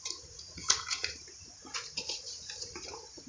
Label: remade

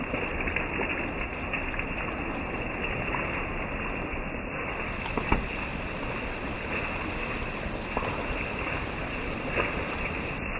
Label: recorded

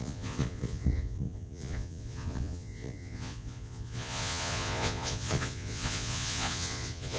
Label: remade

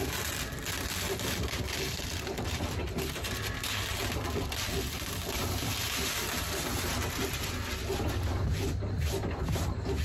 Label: recorded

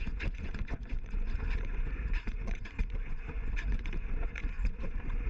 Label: remade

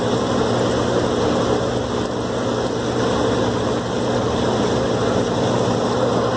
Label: recorded